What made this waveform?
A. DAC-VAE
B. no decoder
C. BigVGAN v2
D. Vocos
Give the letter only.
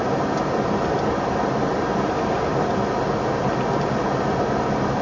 B